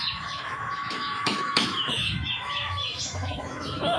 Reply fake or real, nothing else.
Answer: fake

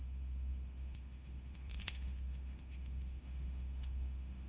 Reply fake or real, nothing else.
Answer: fake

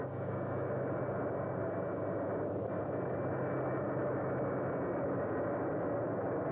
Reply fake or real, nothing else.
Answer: real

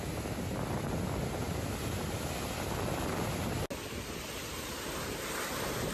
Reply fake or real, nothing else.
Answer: real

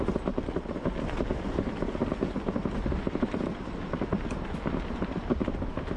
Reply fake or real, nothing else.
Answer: real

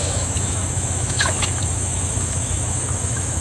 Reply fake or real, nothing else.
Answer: fake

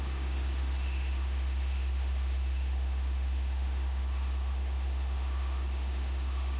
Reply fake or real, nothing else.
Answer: fake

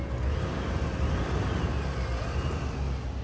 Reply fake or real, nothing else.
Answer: real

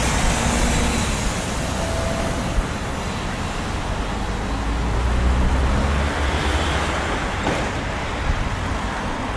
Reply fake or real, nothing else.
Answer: real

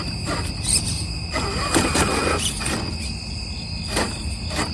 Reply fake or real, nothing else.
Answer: real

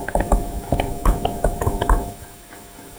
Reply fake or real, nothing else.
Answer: fake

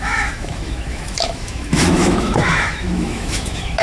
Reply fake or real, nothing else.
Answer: fake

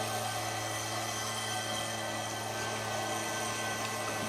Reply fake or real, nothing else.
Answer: real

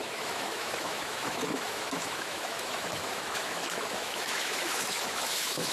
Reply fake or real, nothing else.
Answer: fake